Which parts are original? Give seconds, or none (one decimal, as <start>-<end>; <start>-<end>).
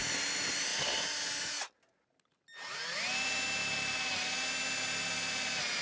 0.0-5.8